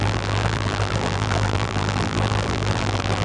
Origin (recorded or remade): remade